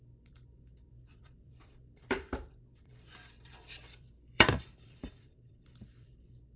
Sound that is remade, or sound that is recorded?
remade